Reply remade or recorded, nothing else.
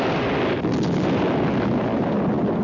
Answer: recorded